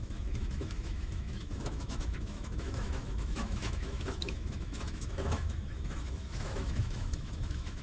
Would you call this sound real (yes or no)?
no